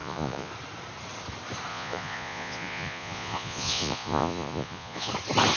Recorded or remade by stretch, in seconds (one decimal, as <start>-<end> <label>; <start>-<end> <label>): 0.0-0.5 remade; 0.5-1.7 recorded; 1.7-5.1 remade; 5.1-5.6 recorded